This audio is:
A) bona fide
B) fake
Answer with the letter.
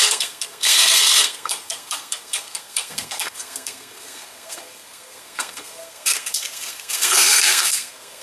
B